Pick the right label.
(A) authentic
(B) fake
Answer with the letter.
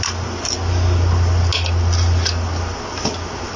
A